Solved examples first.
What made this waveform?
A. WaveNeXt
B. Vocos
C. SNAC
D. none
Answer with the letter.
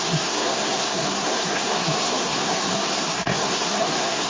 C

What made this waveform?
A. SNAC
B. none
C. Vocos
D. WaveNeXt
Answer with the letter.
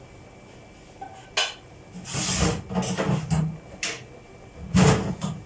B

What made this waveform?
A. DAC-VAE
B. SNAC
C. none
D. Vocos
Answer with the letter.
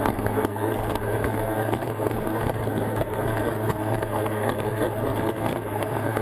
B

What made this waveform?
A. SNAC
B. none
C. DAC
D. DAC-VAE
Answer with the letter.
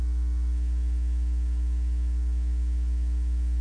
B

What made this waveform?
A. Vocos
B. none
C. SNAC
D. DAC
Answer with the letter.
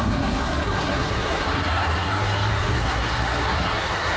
C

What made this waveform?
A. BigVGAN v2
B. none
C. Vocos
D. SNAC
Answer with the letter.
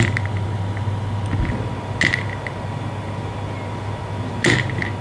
B